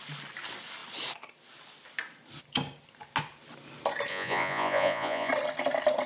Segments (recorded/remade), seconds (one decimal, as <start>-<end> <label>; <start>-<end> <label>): 0.0-4.1 recorded; 4.1-5.3 remade; 5.3-6.1 recorded